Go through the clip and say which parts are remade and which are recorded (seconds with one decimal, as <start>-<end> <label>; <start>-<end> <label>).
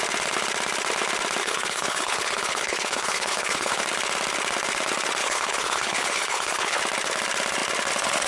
0.0-1.4 recorded; 1.4-3.8 remade; 3.8-5.2 recorded; 5.2-6.8 remade; 6.8-8.3 recorded